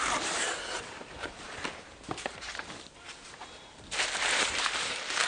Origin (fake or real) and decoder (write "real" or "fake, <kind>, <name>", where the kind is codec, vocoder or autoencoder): fake, vocoder, BigVGAN v2